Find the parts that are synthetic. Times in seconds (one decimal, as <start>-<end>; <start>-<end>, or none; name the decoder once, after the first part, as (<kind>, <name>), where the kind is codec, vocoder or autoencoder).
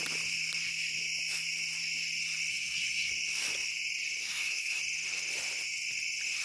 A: 2.5-3.1 (codec, SNAC); 4.2-4.8